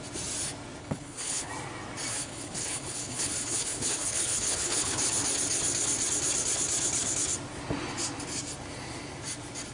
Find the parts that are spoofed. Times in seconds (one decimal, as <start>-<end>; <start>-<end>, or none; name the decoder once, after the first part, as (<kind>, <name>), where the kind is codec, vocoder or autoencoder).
0.8-1.5 (codec, HILCodec); 2.1-5.0